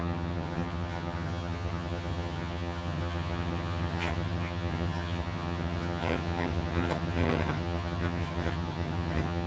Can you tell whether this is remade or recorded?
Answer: remade